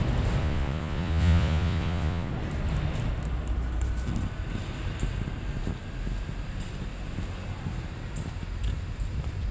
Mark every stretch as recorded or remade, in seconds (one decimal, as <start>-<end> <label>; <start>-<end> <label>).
0.0-0.4 recorded; 0.4-2.3 remade; 2.3-9.5 recorded